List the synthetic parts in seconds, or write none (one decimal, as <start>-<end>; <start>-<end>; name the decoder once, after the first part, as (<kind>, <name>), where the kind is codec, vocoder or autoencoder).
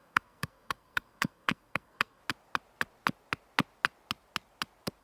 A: 0.0-2.2 (codec, SNAC)